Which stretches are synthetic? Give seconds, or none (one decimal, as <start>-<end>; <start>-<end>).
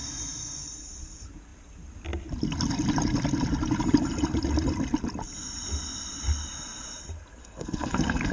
7.4-8.3